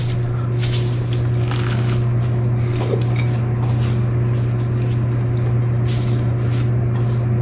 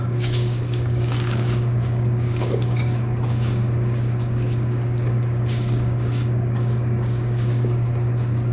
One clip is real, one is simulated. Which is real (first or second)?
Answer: first